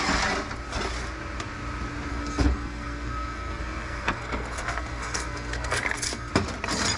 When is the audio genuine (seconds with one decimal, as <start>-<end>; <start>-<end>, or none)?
0.0-2.1; 6.3-7.0